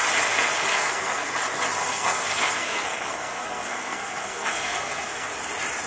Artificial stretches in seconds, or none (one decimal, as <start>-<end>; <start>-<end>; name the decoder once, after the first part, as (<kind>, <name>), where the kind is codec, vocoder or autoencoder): 0.7-1.3 (codec, SNAC); 1.8-5.3